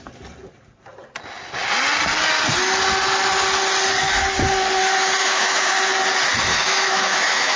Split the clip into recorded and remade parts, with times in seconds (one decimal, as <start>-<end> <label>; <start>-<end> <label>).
0.0-5.2 recorded; 5.2-5.7 remade; 5.7-6.5 recorded; 6.5-7.6 remade

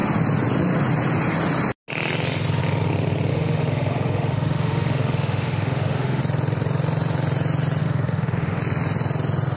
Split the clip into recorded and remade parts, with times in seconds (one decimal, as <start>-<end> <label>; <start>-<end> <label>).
0.0-3.3 recorded; 3.3-6.2 remade; 6.2-7.8 recorded; 7.8-8.6 remade; 8.6-9.6 recorded

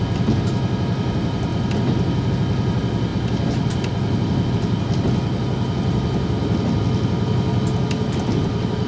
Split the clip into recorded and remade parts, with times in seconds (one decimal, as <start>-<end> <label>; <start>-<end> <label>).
0.0-8.9 recorded